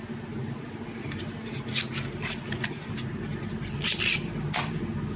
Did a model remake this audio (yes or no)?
no